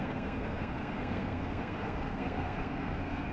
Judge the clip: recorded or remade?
remade